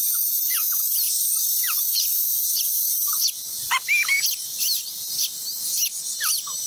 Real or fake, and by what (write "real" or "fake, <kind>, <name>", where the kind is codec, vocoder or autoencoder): real